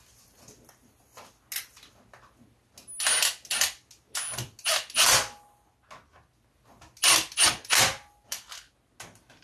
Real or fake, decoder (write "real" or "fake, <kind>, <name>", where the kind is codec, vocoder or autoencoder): real